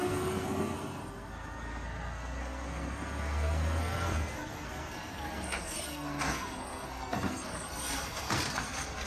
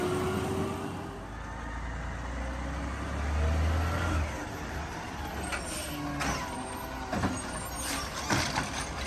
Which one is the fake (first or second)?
first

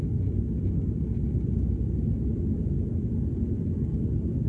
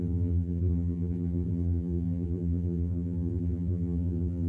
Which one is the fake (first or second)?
second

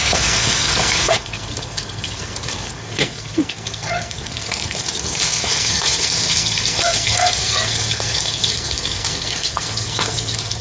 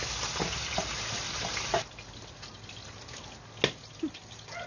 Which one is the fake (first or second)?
first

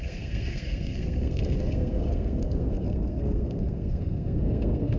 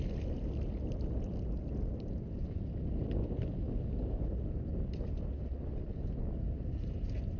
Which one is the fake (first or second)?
first